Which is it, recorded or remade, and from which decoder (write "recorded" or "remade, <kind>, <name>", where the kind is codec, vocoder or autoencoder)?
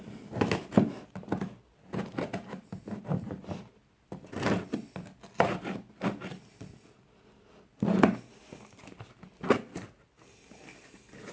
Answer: recorded